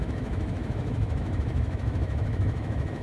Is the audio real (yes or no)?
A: no